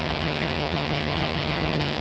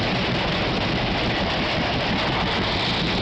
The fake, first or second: first